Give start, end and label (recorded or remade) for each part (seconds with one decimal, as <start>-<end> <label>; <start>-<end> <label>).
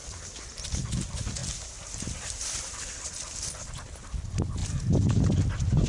0.0-1.4 recorded; 1.4-3.8 remade; 3.8-4.6 recorded; 4.6-5.2 remade; 5.2-5.9 recorded